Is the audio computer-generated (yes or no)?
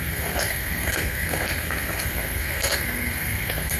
yes